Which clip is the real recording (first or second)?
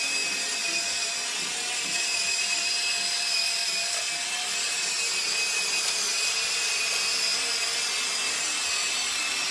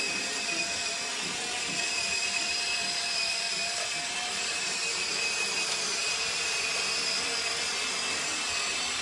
first